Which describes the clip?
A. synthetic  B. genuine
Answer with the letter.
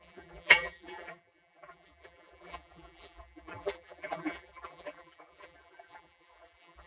A